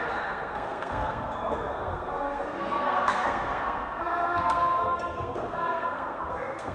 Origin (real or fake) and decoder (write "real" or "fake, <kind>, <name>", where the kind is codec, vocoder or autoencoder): fake, codec, SNAC